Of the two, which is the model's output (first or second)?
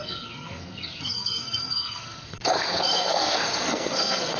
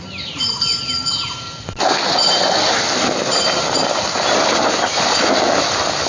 first